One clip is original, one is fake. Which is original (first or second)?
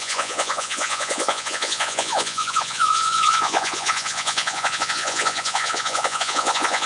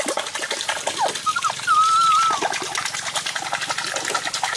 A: second